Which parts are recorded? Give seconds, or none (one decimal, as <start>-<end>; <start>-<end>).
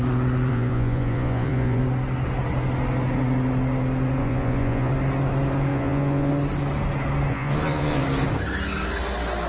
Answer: 0.0-0.5; 1.8-4.2; 4.9-5.7; 6.3-7.3; 8.0-9.5